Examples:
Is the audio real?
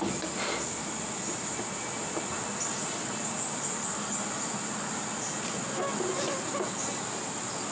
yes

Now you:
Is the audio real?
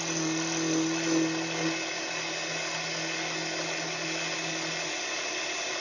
yes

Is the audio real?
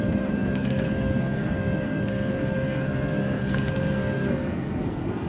no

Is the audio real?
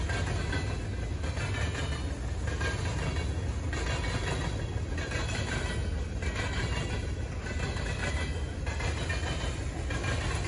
yes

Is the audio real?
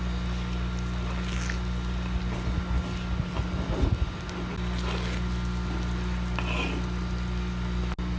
yes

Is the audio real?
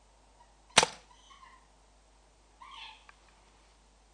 yes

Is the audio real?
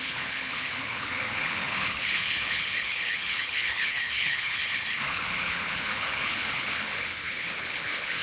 no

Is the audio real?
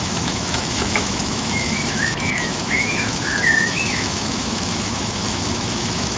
no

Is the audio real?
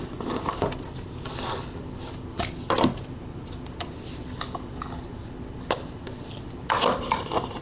yes